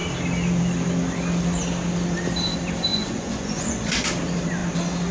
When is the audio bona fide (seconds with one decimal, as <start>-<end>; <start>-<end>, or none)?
0.0-2.9; 3.9-5.1